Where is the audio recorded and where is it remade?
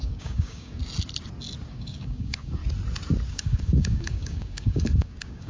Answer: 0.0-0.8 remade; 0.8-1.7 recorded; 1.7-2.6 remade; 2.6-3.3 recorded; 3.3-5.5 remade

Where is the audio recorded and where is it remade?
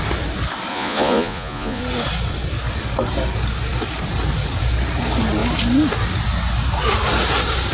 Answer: 0.0-0.7 recorded; 0.7-1.8 remade; 1.8-7.7 recorded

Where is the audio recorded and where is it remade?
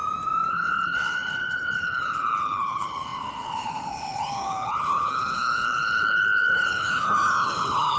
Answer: 0.0-0.5 recorded; 0.5-8.0 remade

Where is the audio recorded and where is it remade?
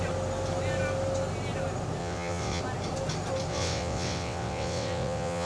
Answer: 0.0-2.0 recorded; 2.0-2.6 remade; 2.6-3.5 recorded; 3.5-5.5 remade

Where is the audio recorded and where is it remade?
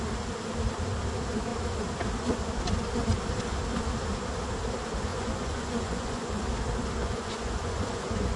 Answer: 0.0-5.1 recorded; 5.1-6.4 remade; 6.4-7.0 recorded; 7.0-8.4 remade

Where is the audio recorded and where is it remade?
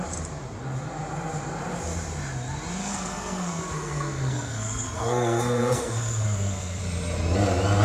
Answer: 0.0-2.8 recorded; 2.8-6.8 remade; 6.8-7.8 recorded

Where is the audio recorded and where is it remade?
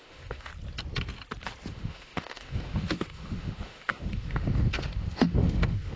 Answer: 0.0-0.5 remade; 0.5-1.7 recorded; 1.7-6.0 remade